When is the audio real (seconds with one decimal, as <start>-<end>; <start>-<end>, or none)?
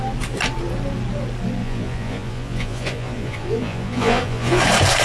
0.0-1.6; 4.6-5.0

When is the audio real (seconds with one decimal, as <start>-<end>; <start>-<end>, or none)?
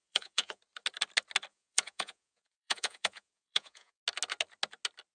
0.6-1.5; 4.0-5.1